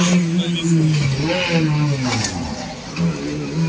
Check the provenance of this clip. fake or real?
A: real